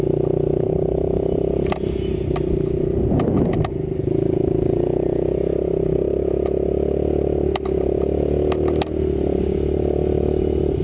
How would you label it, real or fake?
real